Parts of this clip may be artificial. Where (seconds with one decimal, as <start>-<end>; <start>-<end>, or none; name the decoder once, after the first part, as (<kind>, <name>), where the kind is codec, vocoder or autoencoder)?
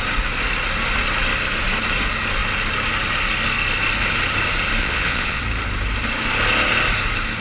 4.8-5.4 (vocoder, Vocos)